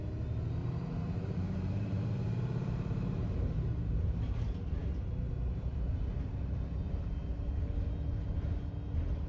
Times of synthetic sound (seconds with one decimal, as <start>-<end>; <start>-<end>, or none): 0.6-4.2